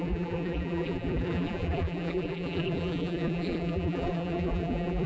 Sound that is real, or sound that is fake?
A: fake